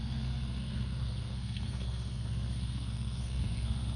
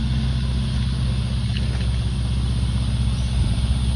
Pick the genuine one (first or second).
second